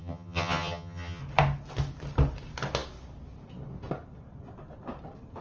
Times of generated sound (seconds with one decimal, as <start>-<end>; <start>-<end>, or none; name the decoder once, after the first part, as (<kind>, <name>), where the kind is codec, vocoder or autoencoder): 0.0-1.2 (vocoder, HiFi-GAN)